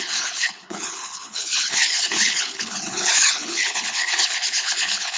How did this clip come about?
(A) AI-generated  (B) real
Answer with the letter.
A